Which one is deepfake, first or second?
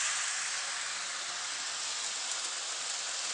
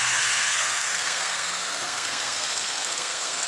second